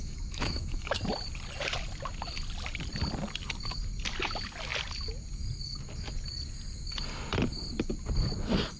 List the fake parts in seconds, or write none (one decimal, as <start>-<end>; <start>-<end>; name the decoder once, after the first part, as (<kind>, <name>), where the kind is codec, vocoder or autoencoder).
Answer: 0.0-1.0 (autoencoder, DAC-VAE)